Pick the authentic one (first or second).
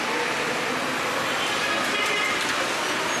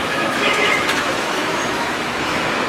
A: first